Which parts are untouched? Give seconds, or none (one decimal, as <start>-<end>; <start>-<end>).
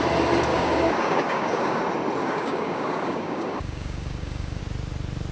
0.0-0.5; 1.8-2.2; 4.6-5.3